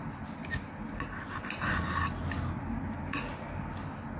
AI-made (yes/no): no